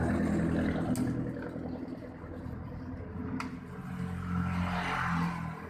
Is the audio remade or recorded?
recorded